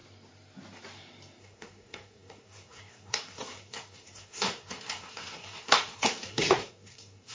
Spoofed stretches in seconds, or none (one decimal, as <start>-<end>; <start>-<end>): 1.4-7.3